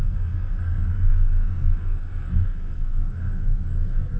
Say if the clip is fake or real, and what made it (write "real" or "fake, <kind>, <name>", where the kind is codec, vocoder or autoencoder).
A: fake, codec, SNAC